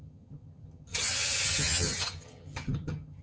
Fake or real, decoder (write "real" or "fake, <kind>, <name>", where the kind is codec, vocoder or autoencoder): fake, vocoder, HiFi-GAN